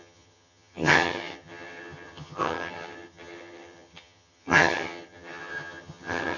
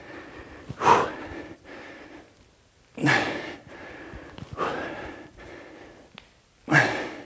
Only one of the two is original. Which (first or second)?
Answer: second